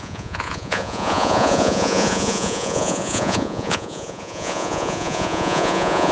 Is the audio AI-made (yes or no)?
yes